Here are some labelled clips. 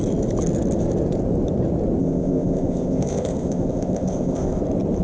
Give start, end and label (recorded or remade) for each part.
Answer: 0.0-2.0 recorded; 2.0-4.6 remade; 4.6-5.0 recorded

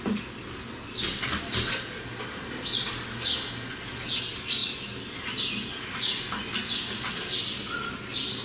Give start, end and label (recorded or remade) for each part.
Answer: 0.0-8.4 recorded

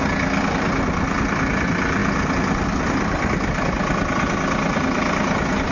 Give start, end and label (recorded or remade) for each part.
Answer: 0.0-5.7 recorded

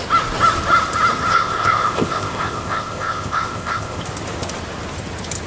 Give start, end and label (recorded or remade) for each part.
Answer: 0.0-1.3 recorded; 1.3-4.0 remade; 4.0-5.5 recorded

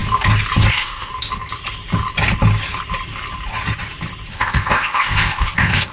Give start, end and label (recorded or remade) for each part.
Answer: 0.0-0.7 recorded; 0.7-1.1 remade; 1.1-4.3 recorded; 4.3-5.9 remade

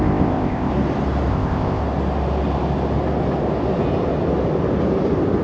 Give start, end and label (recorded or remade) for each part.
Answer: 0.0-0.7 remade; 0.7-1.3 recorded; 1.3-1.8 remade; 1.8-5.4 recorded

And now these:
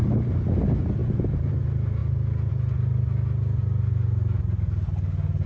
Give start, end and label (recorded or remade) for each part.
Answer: 0.0-5.5 recorded